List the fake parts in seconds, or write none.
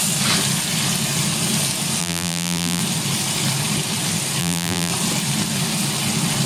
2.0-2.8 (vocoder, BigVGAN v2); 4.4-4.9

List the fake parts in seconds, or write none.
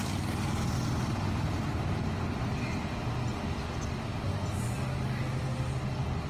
none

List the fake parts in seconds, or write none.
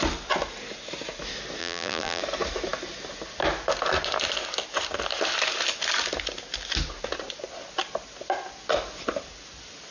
1.6-2.2 (vocoder, BigVGAN v2)